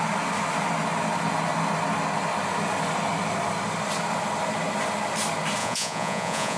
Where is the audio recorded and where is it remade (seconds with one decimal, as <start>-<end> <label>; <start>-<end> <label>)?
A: 0.0-5.6 recorded; 5.6-6.6 remade